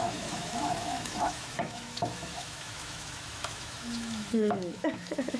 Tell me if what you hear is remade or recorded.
remade